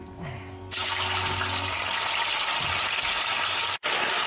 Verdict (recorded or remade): recorded